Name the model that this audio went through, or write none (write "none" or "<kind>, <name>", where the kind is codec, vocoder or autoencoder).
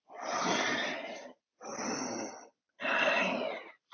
none